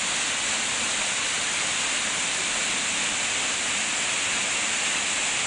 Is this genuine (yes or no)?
yes